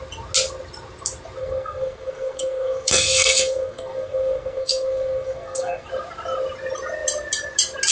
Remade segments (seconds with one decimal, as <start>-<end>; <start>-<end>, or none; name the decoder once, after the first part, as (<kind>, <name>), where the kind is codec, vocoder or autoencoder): 1.4-5.9 (codec, SNAC)